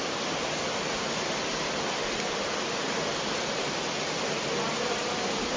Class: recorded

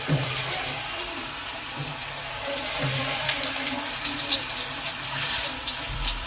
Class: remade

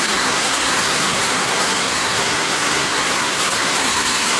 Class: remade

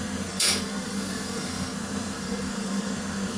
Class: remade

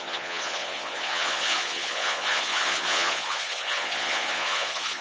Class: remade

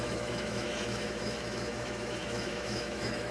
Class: remade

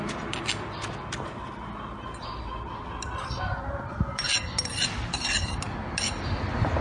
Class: recorded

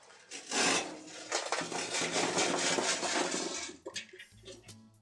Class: recorded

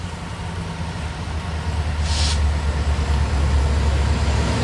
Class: recorded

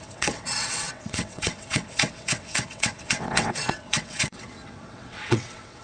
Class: remade